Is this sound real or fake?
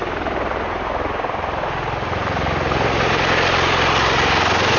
real